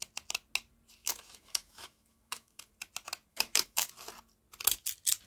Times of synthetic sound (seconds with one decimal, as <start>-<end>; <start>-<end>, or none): 1.0-2.7; 3.3-3.9

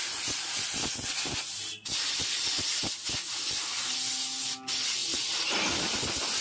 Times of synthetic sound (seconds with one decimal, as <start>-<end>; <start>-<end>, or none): none

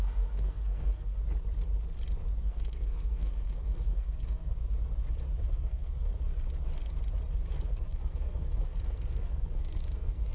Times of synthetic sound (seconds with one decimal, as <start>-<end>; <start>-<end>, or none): 0.0-1.2; 2.4-4.5; 5.5-6.1; 7.5-10.3

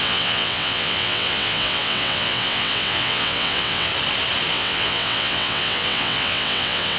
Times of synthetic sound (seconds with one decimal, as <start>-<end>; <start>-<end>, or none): 0.0-3.9; 4.5-7.0

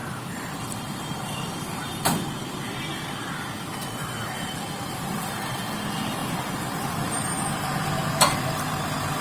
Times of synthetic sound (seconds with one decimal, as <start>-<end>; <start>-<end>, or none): 0.0-2.8; 3.8-5.6; 6.2-8.1

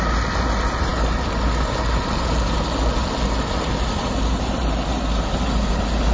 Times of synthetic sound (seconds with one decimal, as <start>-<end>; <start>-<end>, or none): none